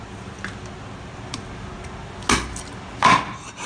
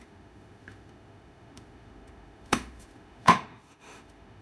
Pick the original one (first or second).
first